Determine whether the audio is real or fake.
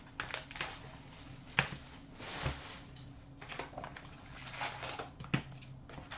real